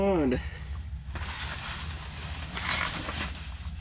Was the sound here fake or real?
real